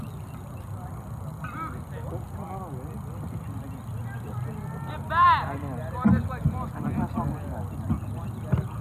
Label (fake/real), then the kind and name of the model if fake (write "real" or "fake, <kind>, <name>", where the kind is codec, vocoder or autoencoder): real